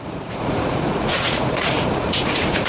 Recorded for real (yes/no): no